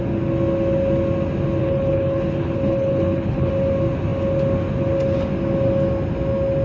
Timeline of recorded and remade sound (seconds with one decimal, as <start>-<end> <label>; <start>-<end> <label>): 0.0-1.6 recorded; 1.6-3.5 remade; 3.5-6.6 recorded